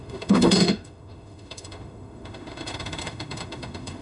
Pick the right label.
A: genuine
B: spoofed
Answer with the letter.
B